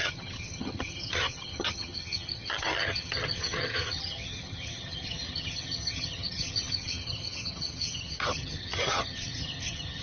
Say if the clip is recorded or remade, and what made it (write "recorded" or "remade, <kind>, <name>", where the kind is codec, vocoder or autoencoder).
remade, vocoder, HiFi-GAN